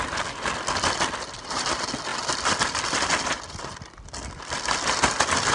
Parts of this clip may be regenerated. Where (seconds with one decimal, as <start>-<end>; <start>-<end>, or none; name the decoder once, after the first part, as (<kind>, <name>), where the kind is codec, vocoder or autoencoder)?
none